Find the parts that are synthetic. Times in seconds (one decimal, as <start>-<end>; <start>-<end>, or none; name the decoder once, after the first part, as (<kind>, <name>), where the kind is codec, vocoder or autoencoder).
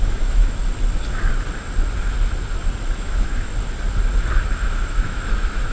0.0-0.6 (autoencoder, DAC-VAE); 3.0-3.5; 4.6-5.7